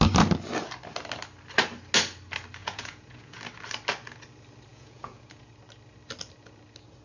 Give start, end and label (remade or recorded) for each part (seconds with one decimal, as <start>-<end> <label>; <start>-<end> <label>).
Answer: 0.0-2.6 recorded; 2.6-3.4 remade; 3.4-4.7 recorded; 4.7-5.5 remade; 5.5-7.0 recorded